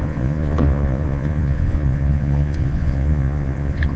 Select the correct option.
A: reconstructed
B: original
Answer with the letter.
A